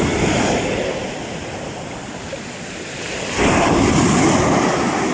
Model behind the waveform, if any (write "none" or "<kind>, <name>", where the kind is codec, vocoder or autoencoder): none